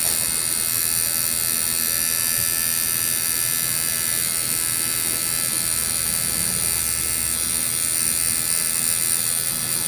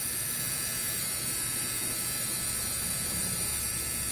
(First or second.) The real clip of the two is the first